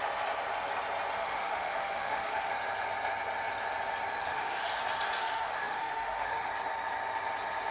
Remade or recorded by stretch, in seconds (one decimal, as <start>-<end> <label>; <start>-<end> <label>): 0.0-1.2 recorded; 1.2-2.5 remade; 2.5-4.2 recorded; 4.2-4.8 remade; 4.8-5.2 recorded; 5.2-6.5 remade; 6.5-7.7 recorded